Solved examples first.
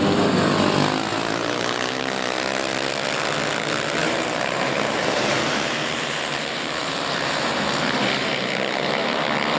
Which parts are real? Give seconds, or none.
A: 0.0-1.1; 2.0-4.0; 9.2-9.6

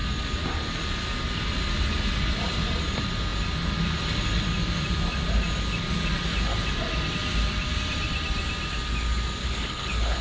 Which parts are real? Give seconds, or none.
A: 0.0-9.4

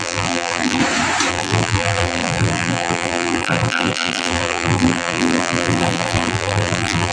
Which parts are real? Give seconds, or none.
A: 0.8-1.3

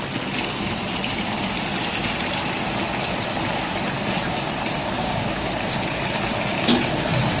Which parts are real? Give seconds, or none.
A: 0.0-4.8; 5.5-7.4

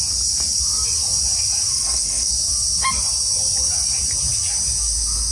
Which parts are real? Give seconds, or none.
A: 0.0-1.7; 2.3-5.3

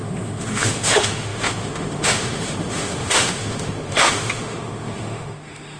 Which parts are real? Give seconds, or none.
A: none

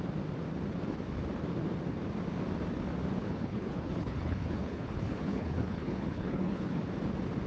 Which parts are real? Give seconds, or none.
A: 0.0-3.2; 6.8-7.5